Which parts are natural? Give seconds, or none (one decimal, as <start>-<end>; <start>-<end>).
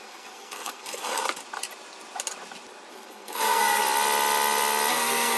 1.2-2.9; 3.8-4.9